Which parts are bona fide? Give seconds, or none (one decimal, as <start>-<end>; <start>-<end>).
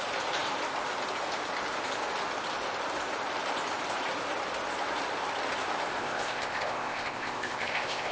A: 0.0-6.0